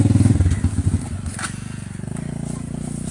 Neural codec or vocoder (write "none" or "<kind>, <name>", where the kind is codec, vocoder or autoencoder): none